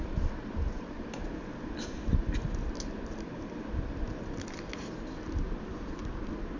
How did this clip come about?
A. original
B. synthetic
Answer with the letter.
A